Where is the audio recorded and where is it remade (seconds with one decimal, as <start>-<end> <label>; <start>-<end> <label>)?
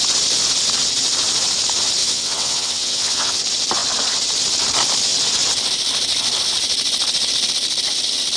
0.0-2.0 recorded; 2.0-3.4 remade; 3.4-8.4 recorded